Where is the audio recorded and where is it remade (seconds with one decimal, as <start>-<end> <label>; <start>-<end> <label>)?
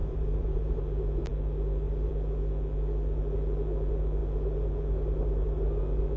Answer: 0.0-0.8 remade; 0.8-6.2 recorded